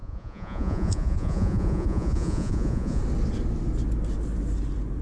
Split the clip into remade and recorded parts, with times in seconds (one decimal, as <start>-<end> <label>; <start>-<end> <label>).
0.0-3.0 remade; 3.0-5.0 recorded